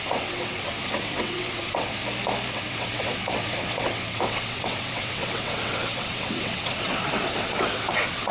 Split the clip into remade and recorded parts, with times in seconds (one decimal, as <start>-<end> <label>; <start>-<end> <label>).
0.0-2.0 remade; 2.0-2.5 recorded; 2.5-8.3 remade

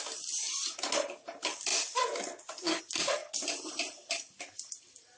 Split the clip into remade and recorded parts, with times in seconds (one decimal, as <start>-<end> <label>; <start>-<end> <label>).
0.0-5.2 recorded